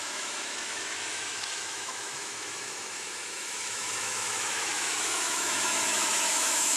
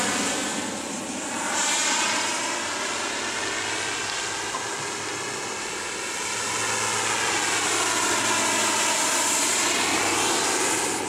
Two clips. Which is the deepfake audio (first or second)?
first